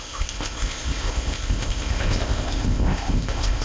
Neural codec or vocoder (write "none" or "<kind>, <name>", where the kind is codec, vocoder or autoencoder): codec, ZipCodec